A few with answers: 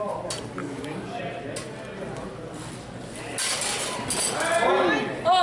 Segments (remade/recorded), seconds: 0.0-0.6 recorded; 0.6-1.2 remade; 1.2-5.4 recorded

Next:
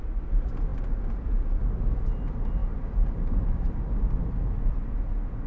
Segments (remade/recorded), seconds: 0.0-5.5 recorded

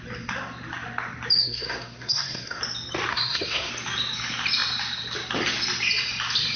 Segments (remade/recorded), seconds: 0.0-1.4 recorded; 1.4-2.6 remade; 2.6-3.1 recorded; 3.1-3.7 remade; 3.7-6.6 recorded